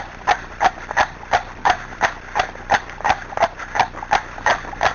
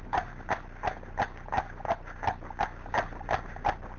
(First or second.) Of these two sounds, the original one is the second